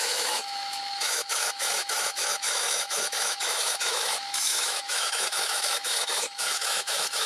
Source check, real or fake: fake